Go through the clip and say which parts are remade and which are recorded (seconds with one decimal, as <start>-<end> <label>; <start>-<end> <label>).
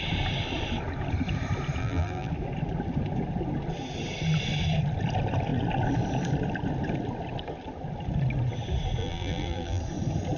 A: 0.0-1.8 recorded; 1.8-2.3 remade; 2.3-9.0 recorded; 9.0-9.8 remade; 9.8-10.4 recorded